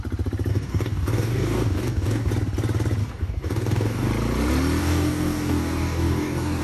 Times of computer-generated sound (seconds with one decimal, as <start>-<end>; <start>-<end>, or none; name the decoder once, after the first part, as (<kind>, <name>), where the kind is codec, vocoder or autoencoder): 0.5-2.3 (codec, DAC); 3.0-4.1; 4.8-6.6